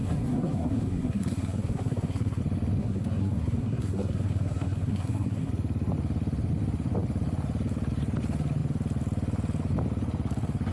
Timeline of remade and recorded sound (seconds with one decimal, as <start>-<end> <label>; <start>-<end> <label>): 0.0-2.4 remade; 2.4-2.8 recorded; 2.8-5.5 remade; 5.5-10.7 recorded